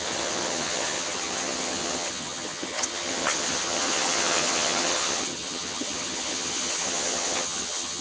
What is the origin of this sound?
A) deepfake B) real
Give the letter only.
A